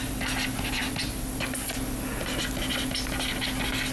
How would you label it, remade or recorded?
recorded